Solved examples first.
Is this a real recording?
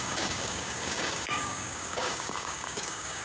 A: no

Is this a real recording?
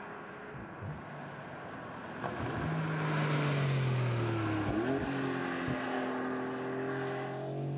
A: yes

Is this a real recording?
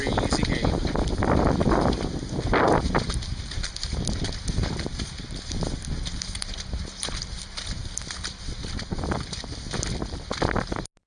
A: yes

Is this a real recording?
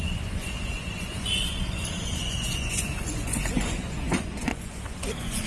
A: no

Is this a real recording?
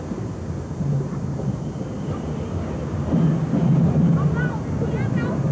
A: yes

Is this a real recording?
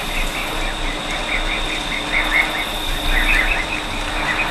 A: yes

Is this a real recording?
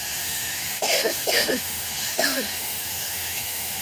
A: no